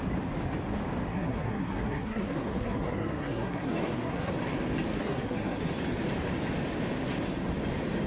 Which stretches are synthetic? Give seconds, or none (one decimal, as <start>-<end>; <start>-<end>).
1.1-4.3; 4.9-5.6